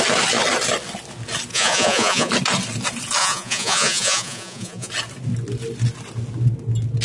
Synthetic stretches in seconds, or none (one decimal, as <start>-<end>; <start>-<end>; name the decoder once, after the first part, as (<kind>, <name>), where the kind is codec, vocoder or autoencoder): 1.5-2.3 (vocoder, Vocos); 3.2-4.9